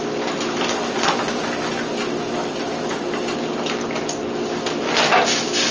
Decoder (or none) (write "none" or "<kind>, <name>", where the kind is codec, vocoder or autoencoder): none